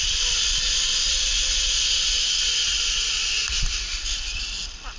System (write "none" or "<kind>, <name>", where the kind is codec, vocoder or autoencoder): none